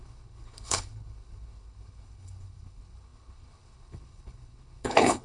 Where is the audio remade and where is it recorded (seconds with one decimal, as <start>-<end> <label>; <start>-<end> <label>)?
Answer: 0.0-5.2 remade